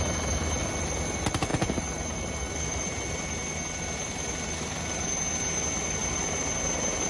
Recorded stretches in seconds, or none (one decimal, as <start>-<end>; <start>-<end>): 0.0-7.1